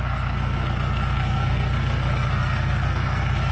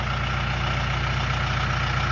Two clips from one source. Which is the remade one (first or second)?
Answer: first